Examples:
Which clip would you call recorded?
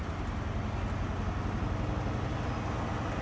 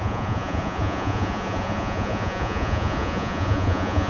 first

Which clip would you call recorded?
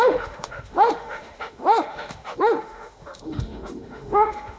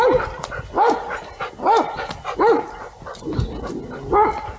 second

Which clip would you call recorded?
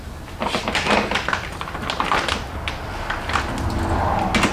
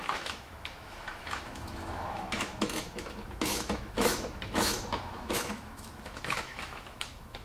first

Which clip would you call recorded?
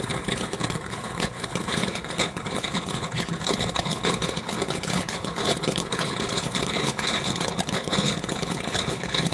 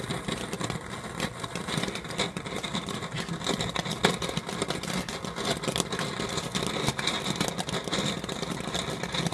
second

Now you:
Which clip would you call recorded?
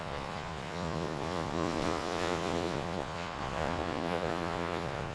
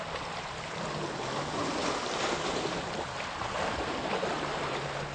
second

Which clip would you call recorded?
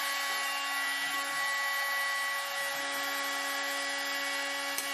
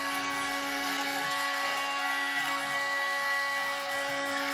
first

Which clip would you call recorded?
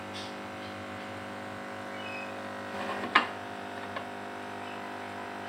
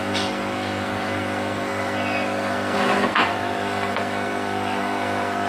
first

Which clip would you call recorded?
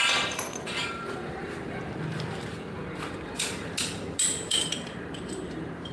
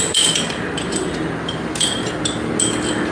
second